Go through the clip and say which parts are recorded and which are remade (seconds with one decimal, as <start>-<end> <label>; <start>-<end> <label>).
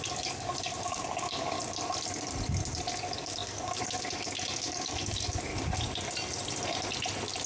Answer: 0.0-1.6 remade; 1.6-2.9 recorded; 2.9-5.5 remade; 5.5-7.5 recorded